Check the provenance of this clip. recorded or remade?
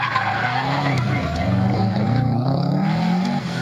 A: remade